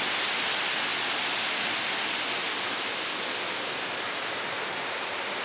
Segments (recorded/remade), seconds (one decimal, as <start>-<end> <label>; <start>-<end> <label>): 0.0-5.4 recorded